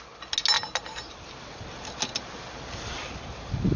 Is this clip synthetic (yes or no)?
no